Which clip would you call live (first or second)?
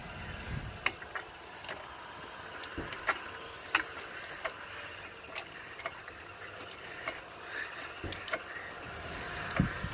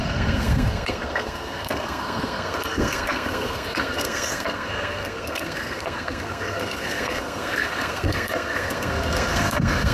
first